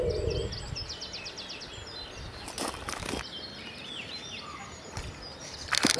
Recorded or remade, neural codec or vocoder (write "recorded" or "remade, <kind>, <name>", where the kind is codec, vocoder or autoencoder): recorded